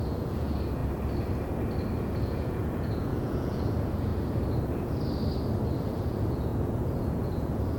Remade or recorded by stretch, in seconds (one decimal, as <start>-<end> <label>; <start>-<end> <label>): 0.0-0.8 remade; 0.8-2.0 recorded; 2.0-4.1 remade; 4.1-5.7 recorded; 5.7-7.8 remade